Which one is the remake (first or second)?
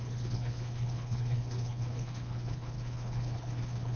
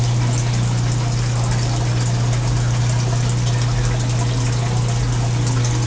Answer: first